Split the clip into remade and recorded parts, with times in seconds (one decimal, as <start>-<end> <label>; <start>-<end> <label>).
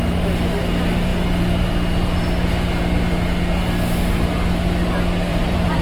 0.0-5.3 recorded; 5.3-5.8 remade